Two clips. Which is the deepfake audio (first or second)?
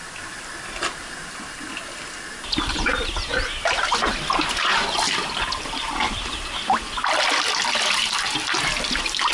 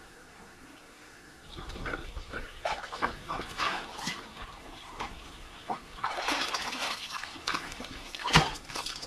second